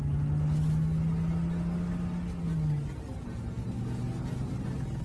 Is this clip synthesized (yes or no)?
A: no